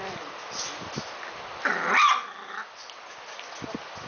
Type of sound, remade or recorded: recorded